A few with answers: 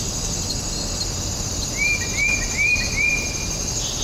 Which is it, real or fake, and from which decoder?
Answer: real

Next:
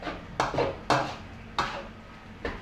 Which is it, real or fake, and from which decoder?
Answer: real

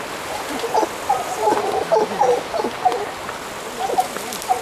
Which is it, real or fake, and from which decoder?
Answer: real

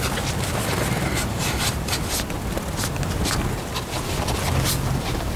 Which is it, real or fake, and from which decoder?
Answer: real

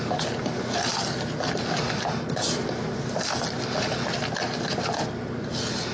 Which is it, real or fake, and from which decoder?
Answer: real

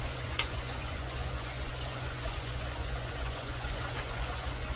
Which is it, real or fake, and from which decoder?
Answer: fake, vocoder, Vocos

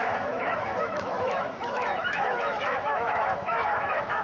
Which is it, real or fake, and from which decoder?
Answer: fake, autoencoder, DAC-VAE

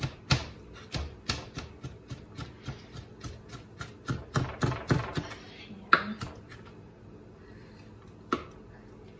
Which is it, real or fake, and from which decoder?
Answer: real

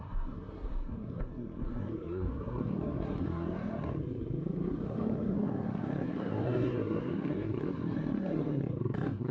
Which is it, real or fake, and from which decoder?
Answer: fake, codec, SNAC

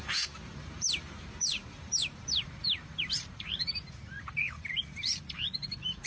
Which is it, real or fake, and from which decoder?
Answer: fake, vocoder, BigVGAN v2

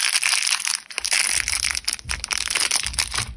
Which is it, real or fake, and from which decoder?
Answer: real